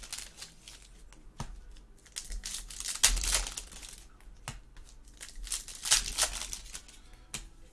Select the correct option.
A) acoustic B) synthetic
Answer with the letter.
A